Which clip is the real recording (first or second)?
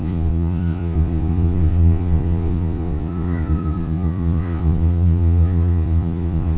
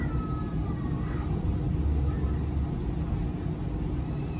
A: second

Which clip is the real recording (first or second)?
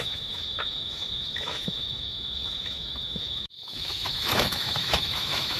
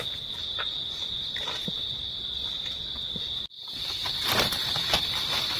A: second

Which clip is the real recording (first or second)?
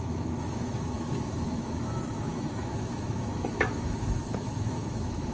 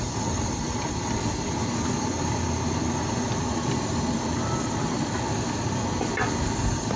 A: second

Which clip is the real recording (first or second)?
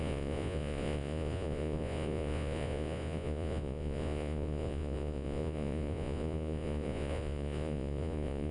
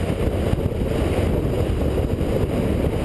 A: second